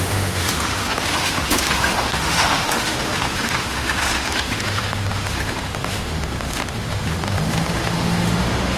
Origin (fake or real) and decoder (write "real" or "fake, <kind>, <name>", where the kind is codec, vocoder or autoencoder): fake, autoencoder, DAC-VAE